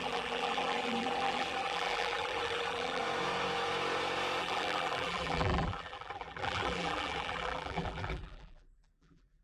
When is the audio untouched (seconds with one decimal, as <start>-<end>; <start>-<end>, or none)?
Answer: 3.0-4.4